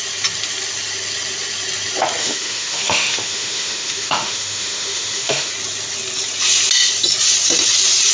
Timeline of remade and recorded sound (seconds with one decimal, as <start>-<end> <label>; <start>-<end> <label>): 0.0-2.2 recorded; 2.2-5.5 remade; 5.5-8.1 recorded